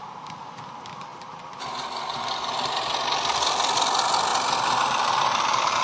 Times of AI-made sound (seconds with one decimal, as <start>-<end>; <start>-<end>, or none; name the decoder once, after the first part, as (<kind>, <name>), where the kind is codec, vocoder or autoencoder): none